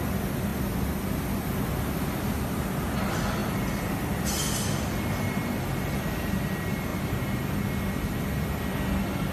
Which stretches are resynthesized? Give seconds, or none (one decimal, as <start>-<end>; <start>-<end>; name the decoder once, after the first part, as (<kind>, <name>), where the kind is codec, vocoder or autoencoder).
3.4-6.0 (vocoder, BigVGAN v2)